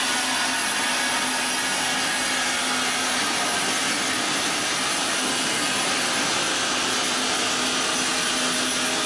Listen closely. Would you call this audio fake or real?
real